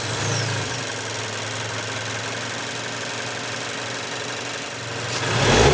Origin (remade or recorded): recorded